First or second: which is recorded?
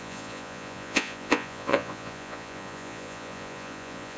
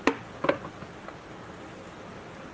second